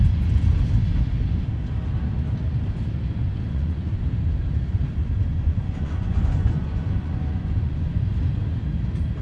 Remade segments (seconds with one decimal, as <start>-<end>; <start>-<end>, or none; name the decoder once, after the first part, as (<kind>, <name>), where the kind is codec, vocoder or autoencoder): 3.3-4.0 (vocoder, Vocos); 5.3-8.0